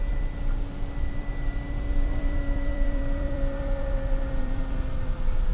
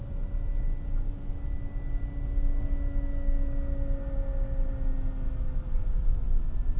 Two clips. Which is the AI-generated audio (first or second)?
first